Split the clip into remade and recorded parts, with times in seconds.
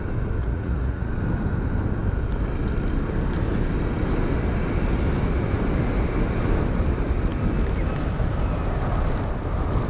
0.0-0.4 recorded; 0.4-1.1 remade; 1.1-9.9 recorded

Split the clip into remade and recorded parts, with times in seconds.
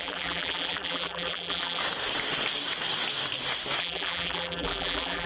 0.0-1.8 remade; 1.8-3.8 recorded; 3.8-5.3 remade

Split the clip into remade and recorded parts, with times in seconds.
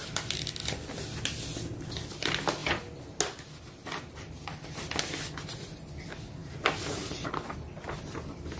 0.0-8.6 recorded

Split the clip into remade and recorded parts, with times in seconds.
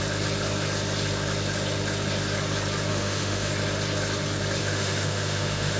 0.0-2.9 recorded; 2.9-3.5 remade; 3.5-4.6 recorded; 4.6-5.8 remade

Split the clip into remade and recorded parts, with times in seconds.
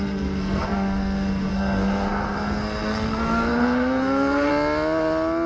0.0-4.5 remade; 4.5-5.5 recorded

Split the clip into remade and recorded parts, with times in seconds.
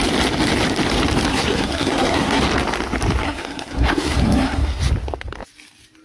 0.0-1.3 recorded; 1.3-2.4 remade; 2.4-3.2 recorded; 3.2-4.8 remade; 4.8-6.0 recorded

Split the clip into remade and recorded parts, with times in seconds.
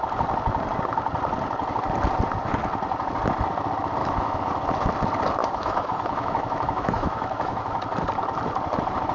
0.0-4.0 recorded; 4.0-4.5 remade; 4.5-5.4 recorded; 5.4-7.8 remade; 7.8-9.1 recorded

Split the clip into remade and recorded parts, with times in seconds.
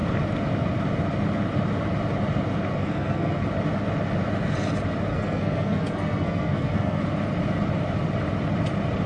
0.0-2.8 recorded; 2.8-3.4 remade; 3.4-5.1 recorded; 5.1-7.0 remade; 7.0-9.1 recorded